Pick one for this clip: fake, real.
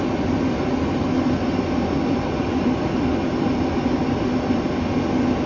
real